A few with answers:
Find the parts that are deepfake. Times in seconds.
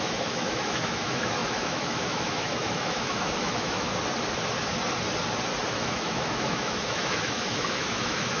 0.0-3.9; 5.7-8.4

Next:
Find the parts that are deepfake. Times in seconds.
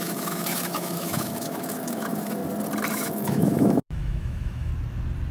0.0-2.4; 2.9-4.7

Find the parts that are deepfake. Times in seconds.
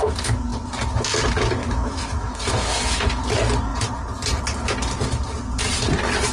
1.6-3.1